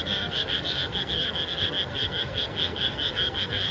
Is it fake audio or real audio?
fake